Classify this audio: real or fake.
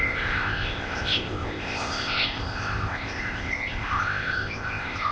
fake